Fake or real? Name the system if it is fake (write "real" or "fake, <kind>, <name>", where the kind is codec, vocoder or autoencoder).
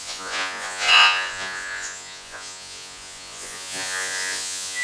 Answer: fake, vocoder, Vocos